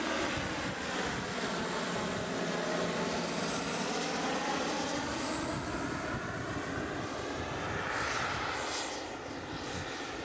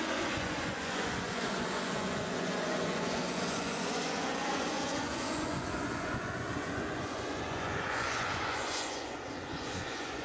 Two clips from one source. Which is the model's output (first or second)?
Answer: second